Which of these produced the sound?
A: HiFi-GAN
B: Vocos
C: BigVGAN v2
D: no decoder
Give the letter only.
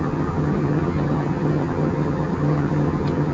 A